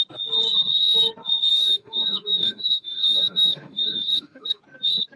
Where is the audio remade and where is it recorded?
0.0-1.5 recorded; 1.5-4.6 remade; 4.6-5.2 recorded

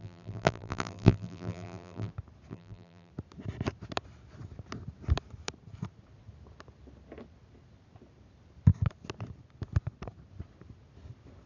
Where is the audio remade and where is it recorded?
0.0-2.1 remade; 2.1-2.5 recorded; 2.5-3.1 remade; 3.1-11.5 recorded

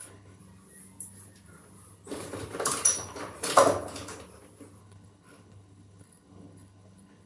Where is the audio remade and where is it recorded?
0.0-0.4 remade; 0.4-4.8 recorded; 4.8-7.3 remade